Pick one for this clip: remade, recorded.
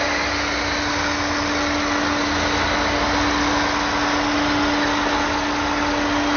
recorded